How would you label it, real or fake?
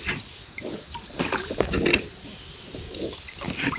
real